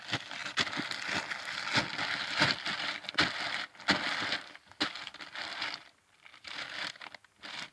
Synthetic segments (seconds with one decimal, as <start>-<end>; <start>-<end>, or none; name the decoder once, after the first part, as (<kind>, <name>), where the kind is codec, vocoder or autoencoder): none